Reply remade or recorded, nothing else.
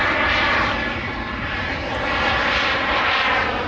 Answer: recorded